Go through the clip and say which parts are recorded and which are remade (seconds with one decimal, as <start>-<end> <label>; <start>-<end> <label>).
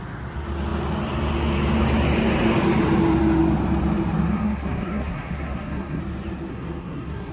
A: 0.0-4.3 recorded; 4.3-6.0 remade; 6.0-6.5 recorded; 6.5-7.3 remade